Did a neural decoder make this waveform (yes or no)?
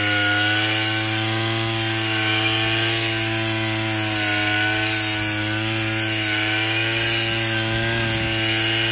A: no